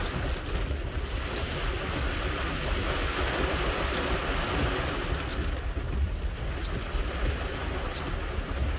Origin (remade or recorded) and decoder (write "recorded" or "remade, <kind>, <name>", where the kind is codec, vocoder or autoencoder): recorded